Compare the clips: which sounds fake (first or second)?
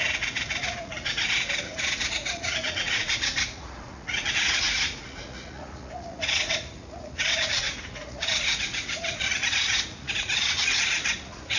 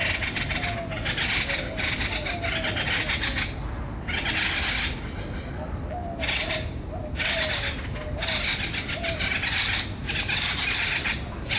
first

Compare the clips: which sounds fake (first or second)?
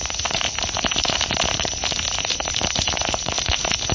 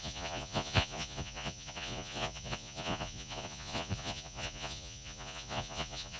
second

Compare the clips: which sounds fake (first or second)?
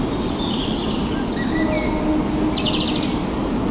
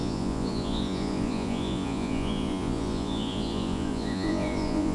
second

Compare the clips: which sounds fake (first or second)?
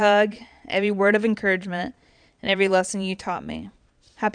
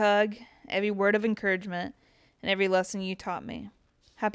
first